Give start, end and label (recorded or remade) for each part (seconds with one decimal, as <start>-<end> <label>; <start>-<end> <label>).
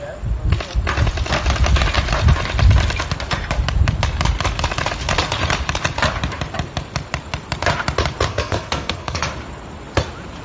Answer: 0.0-8.3 recorded; 8.3-9.2 remade; 9.2-10.4 recorded